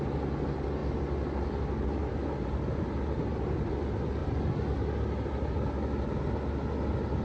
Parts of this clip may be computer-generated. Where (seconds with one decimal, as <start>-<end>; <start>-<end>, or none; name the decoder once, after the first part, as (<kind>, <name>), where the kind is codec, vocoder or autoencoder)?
none